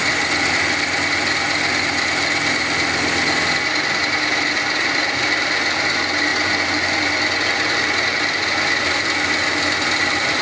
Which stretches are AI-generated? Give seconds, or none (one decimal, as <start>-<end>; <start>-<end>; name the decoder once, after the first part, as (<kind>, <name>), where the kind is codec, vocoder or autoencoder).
none